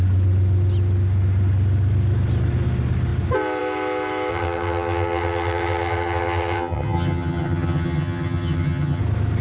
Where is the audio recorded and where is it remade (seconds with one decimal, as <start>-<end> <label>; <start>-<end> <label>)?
0.0-4.3 recorded; 4.3-9.0 remade; 9.0-9.4 recorded